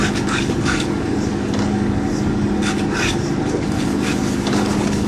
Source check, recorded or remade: remade